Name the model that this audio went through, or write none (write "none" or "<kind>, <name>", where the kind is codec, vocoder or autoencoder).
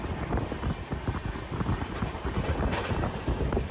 none